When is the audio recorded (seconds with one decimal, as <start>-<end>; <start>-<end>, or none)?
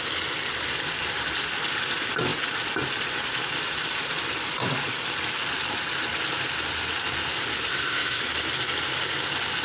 0.0-7.7; 8.2-9.6